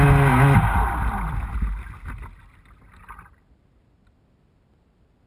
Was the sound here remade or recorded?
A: recorded